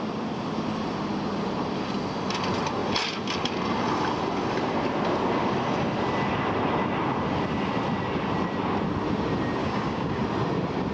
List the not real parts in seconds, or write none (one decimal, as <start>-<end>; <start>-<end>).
9.6-10.2